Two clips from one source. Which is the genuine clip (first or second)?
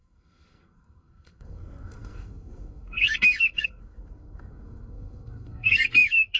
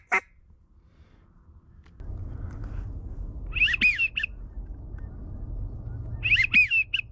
second